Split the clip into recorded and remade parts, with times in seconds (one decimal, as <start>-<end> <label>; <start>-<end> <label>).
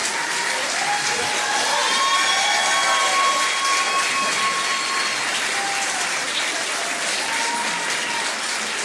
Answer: 0.0-8.8 recorded